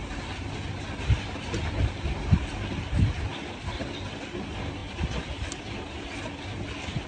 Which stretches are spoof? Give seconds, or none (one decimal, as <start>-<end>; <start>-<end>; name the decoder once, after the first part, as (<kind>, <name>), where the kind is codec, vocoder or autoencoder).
none